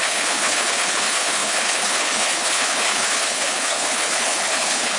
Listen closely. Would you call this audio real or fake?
fake